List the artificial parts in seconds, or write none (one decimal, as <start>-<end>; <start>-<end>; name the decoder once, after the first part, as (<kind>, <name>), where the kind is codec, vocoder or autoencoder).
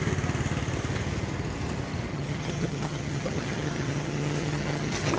2.1-5.2 (vocoder, HiFi-GAN)